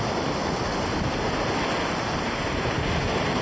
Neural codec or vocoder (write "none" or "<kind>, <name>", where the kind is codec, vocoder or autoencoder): none